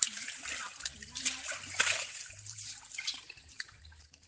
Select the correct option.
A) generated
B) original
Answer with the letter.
A